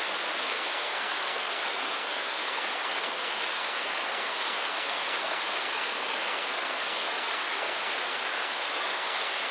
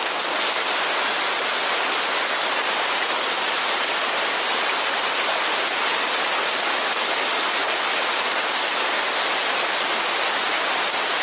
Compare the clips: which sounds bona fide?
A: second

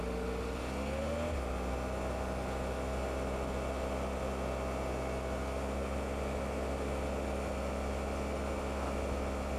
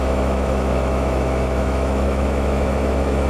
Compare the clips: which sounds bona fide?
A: first